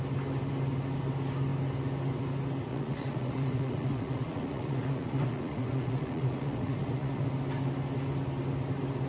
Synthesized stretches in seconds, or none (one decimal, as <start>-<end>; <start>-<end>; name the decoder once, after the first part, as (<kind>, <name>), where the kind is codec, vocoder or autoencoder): 2.7-7.3 (vocoder, Vocos)